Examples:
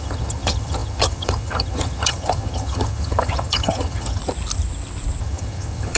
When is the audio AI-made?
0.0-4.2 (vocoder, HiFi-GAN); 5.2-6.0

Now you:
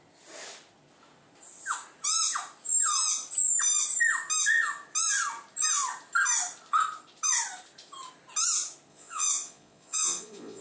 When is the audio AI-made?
8.9-10.6 (vocoder, Vocos)

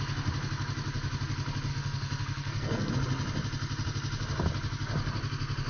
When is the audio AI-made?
1.7-2.9 (codec, SNAC)

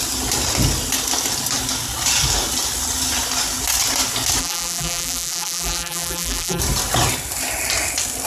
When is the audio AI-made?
4.4-6.6 (vocoder, BigVGAN v2)